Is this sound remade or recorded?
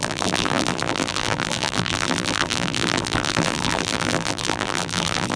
remade